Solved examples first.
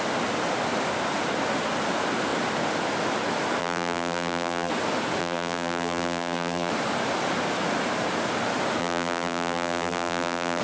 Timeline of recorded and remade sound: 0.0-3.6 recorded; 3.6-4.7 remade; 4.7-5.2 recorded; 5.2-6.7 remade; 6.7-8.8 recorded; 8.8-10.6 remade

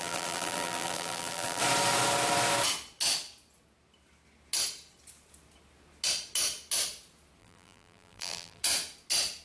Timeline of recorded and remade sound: 0.0-1.6 remade; 1.6-7.4 recorded; 7.4-8.6 remade; 8.6-9.4 recorded

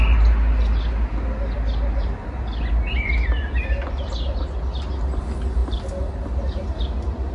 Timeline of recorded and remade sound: 0.0-7.3 recorded

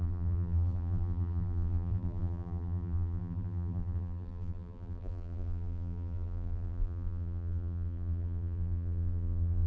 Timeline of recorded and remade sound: 0.0-9.7 remade

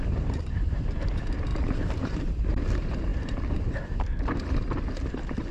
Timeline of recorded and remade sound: 0.0-3.1 remade; 3.1-5.1 recorded; 5.1-5.5 remade

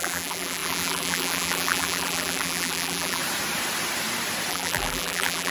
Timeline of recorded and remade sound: 0.0-3.2 remade; 3.2-4.5 recorded; 4.5-5.5 remade

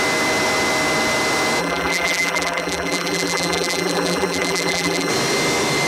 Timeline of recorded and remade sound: 0.0-1.6 recorded; 1.6-5.1 remade; 5.1-5.9 recorded